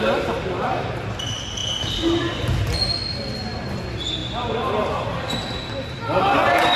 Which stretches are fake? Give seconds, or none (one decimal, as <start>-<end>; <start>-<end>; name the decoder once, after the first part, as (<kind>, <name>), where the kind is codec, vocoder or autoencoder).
none